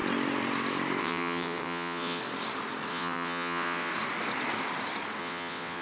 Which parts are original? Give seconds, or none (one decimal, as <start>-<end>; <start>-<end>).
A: 0.0-1.0; 2.2-2.9; 3.9-5.2